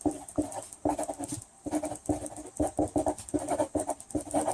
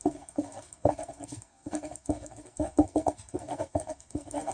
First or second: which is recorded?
first